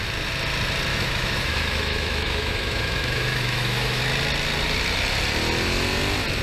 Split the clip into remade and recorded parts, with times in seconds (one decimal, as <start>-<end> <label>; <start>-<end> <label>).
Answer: 0.0-0.9 recorded; 0.9-4.0 remade; 4.0-6.4 recorded